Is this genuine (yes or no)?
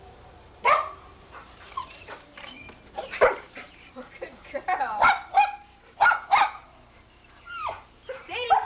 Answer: no